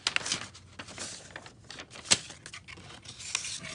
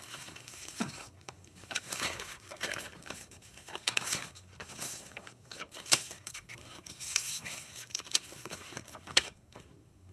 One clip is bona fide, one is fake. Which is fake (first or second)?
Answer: second